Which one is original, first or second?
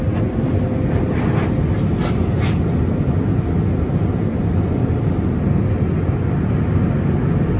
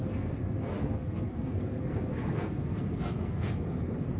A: first